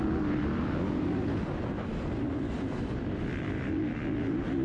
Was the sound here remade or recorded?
remade